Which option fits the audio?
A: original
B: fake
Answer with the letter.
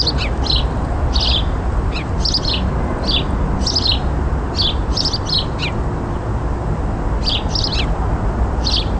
A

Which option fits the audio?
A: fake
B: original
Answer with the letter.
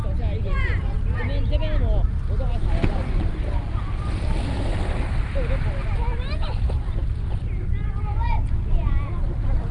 B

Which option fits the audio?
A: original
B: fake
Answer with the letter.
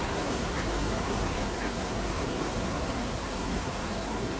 B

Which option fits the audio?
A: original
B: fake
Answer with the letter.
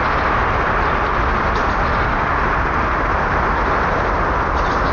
A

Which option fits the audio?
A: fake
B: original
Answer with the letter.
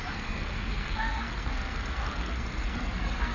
A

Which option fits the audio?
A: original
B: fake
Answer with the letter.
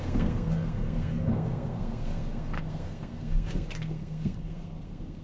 B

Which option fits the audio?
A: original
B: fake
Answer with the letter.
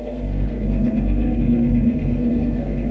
B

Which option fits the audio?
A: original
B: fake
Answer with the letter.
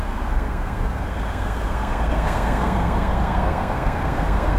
B